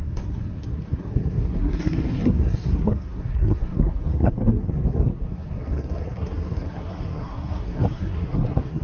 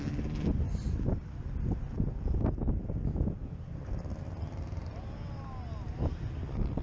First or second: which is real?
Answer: second